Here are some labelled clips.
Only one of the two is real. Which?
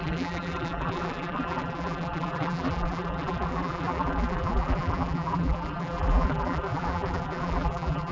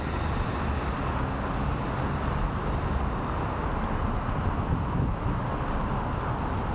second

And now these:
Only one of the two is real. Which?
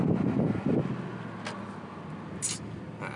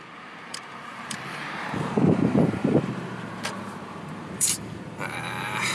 first